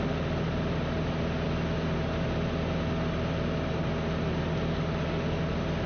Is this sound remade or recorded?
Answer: recorded